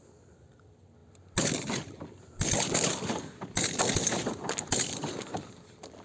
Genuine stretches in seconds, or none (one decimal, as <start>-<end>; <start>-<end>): 0.0-6.0